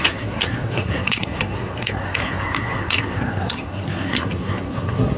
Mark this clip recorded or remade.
remade